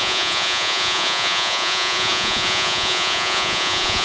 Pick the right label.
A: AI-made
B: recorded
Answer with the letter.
A